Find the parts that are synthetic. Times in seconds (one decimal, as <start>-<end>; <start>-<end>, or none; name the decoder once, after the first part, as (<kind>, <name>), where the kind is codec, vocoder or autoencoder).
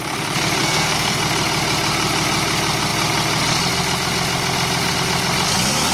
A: 0.6-1.2 (codec, SNAC)